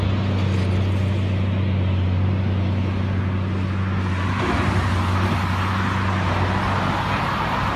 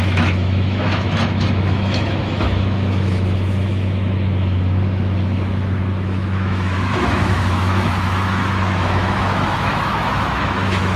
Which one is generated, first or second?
second